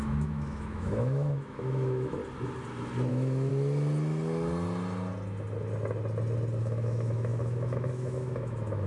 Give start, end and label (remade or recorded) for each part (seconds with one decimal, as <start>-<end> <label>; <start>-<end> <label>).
0.0-2.2 remade; 2.2-3.1 recorded; 3.1-3.5 remade; 3.5-6.6 recorded; 6.6-8.9 remade